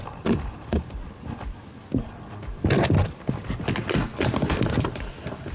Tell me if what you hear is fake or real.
real